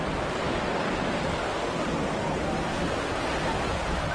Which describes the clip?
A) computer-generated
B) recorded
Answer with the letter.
B